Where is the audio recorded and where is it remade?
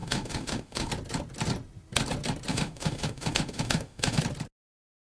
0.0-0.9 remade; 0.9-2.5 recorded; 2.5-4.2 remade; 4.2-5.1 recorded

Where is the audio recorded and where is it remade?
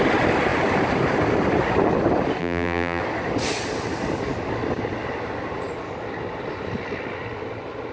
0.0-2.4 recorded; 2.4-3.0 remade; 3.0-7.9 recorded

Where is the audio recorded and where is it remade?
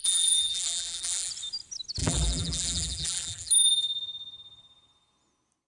0.0-1.3 remade; 1.3-2.0 recorded; 2.0-3.5 remade; 3.5-5.7 recorded